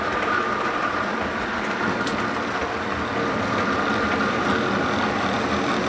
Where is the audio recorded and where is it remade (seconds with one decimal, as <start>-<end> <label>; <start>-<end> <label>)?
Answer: 0.0-2.1 remade; 2.1-5.9 recorded